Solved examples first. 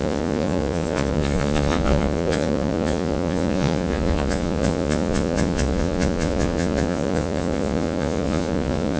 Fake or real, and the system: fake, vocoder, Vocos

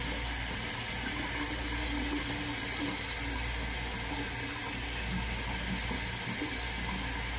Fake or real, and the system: real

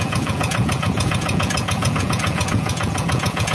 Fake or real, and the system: fake, vocoder, Vocos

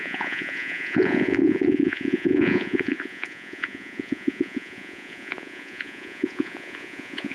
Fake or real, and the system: fake, vocoder, Vocos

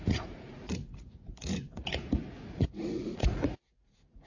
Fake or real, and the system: fake, vocoder, Vocos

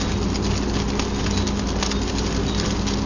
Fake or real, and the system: real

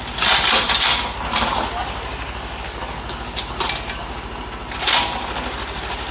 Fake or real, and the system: real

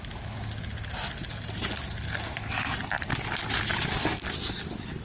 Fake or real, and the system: real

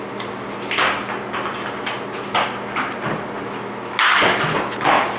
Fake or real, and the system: real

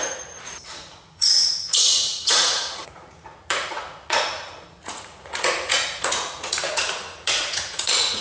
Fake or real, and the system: fake, vocoder, Vocos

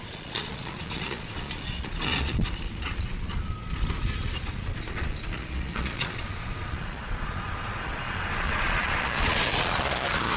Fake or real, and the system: fake, vocoder, Vocos